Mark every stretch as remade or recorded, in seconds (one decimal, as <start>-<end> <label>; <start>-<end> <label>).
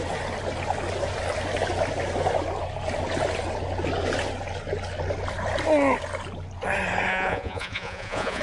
0.0-7.1 recorded; 7.1-8.4 remade